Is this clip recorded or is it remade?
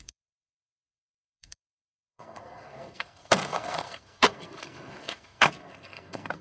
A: remade